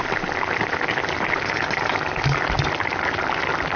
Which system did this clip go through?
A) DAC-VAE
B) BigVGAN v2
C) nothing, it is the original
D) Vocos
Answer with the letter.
C